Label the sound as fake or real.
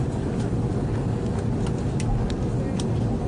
real